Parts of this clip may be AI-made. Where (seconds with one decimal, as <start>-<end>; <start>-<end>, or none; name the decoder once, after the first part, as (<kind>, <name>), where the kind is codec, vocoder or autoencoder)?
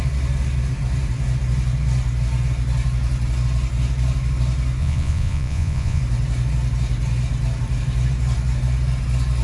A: 4.8-6.0 (vocoder, Vocos)